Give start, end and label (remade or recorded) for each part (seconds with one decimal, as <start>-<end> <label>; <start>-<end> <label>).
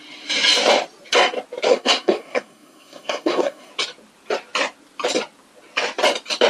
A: 0.0-1.7 recorded; 1.7-3.7 remade; 3.7-6.5 recorded